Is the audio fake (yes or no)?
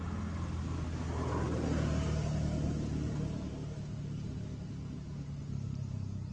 no